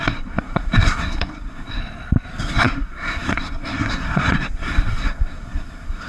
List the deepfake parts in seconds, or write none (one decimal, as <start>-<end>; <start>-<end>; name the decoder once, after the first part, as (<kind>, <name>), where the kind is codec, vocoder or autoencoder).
0.0-1.8 (codec, SNAC); 2.4-6.1